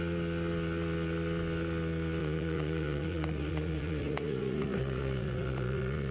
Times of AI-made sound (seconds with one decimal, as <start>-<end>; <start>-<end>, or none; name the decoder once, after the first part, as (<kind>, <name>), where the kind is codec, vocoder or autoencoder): 2.2-6.1 (vocoder, Vocos)